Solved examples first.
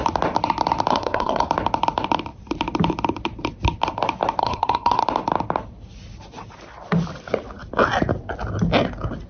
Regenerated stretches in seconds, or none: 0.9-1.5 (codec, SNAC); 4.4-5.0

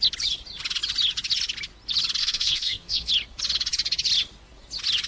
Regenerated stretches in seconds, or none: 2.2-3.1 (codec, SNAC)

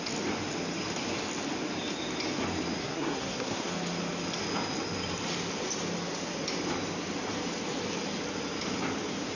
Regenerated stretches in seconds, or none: 2.8-3.7 (codec, SNAC)

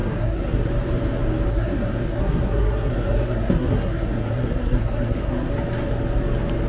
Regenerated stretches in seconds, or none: 0.0-0.7 (codec, SNAC); 1.5-5.5

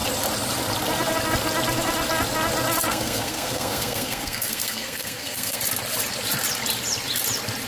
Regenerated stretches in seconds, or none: 2.9-5.6 (codec, SNAC)

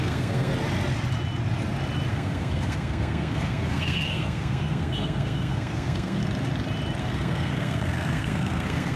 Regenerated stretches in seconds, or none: 0.0-0.5 (codec, SNAC); 2.1-6.2; 7.0-9.0

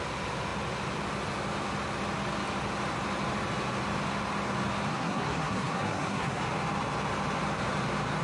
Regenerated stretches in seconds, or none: 4.9-6.4 (codec, SNAC)